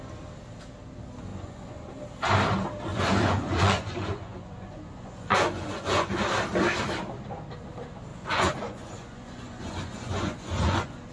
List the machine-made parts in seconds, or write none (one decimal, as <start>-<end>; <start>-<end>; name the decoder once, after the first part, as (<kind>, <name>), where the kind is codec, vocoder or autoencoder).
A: 1.3-1.9 (vocoder, Vocos); 2.9-6.1; 8.1-11.1

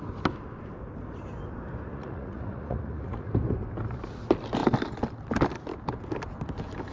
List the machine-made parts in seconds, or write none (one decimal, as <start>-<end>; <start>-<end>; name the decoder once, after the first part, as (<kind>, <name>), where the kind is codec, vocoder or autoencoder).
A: 1.9-3.3 (vocoder, Vocos)

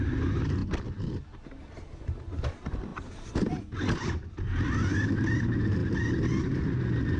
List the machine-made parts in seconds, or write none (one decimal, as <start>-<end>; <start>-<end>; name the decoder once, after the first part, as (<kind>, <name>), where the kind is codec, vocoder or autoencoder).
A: none